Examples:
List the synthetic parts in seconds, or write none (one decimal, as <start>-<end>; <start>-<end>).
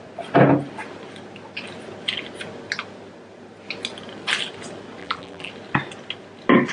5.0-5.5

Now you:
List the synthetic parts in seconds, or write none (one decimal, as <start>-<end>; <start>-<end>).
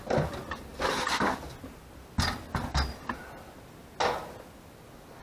none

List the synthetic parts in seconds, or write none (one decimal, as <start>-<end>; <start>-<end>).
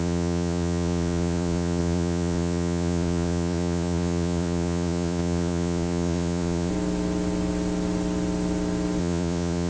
0.0-6.7; 9.0-9.7